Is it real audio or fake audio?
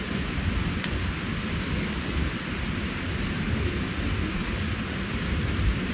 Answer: real